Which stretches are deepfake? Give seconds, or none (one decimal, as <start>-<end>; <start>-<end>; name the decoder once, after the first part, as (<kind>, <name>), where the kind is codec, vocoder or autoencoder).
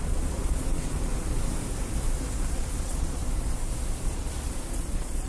0.0-1.1 (vocoder, Vocos); 2.5-3.2; 4.1-5.3